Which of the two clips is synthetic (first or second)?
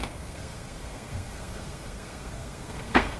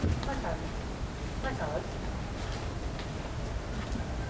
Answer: first